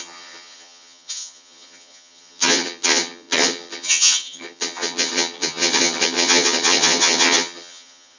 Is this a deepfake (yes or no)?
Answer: yes